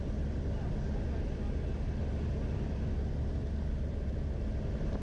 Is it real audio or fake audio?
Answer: real